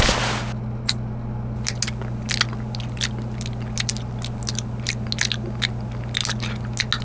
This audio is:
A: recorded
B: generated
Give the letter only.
A